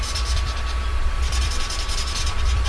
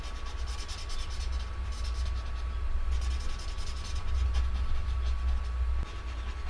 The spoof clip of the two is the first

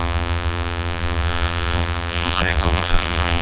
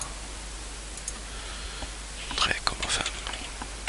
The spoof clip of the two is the first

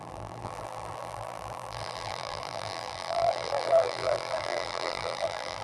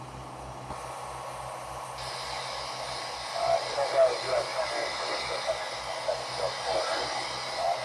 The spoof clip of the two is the first